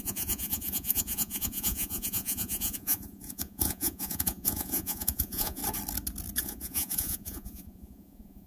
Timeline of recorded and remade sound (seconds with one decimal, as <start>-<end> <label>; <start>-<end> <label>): 0.0-5.6 remade; 5.6-6.4 recorded; 6.4-8.5 remade